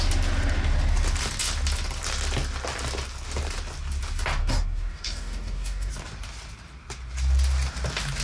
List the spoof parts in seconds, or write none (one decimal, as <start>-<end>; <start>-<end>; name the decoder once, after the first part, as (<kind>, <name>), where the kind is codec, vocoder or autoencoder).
4.4-5.9 (codec, DAC)